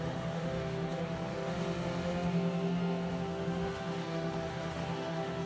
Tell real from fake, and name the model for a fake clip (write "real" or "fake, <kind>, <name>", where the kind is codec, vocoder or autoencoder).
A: fake, autoencoder, DAC-VAE